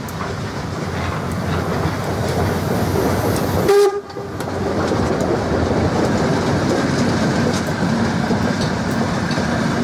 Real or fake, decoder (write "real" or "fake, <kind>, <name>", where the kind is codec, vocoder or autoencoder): real